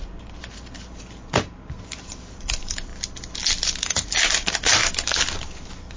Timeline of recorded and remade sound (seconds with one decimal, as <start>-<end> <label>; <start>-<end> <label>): 0.0-2.9 remade; 2.9-3.8 recorded; 3.8-4.8 remade; 4.8-6.0 recorded